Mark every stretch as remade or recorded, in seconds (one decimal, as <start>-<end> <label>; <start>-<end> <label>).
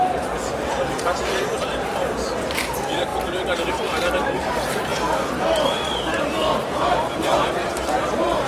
0.0-4.9 remade; 4.9-6.2 recorded; 6.2-8.5 remade